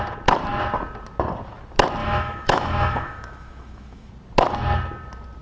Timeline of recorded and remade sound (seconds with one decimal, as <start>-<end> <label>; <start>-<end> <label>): 0.0-2.0 recorded; 2.0-4.1 remade; 4.1-5.4 recorded